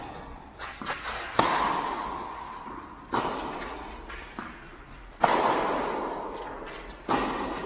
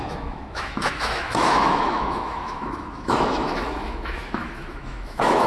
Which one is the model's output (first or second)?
second